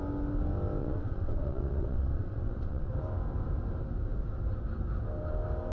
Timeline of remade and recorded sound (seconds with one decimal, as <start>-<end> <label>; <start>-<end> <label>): 0.0-0.8 recorded; 0.8-2.9 remade; 2.9-5.7 recorded